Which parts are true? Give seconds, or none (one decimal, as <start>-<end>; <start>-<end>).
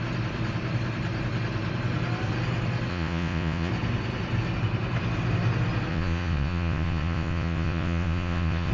0.0-2.9; 3.7-5.9